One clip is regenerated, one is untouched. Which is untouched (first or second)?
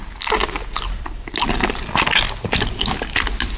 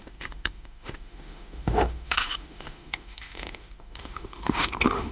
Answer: first